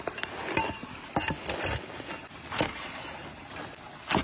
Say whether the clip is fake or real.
real